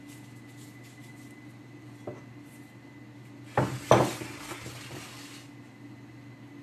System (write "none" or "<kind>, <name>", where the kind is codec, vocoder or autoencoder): none